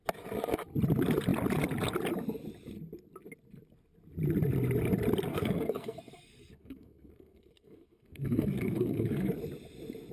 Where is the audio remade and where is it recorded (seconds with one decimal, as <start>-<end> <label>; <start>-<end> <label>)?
0.0-5.3 recorded; 5.3-9.3 remade; 9.3-10.1 recorded